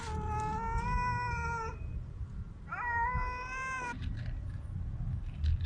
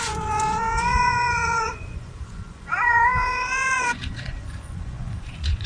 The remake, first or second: second